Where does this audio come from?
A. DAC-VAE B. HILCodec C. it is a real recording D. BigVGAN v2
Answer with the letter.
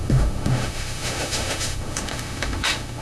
A